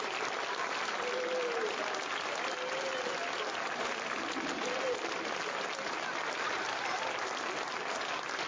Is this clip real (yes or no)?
yes